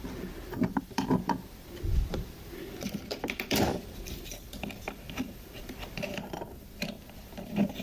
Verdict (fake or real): fake